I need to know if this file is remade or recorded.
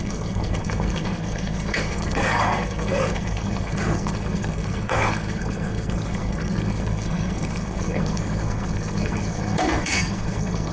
remade